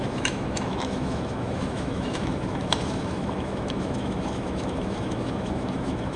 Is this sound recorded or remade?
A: remade